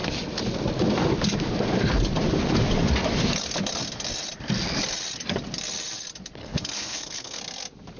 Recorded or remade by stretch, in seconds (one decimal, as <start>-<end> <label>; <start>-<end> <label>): 0.0-6.4 recorded; 6.4-7.4 remade; 7.4-8.0 recorded